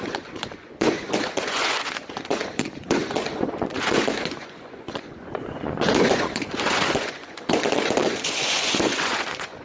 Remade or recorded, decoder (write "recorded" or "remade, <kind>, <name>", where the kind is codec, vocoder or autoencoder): remade, vocoder, Vocos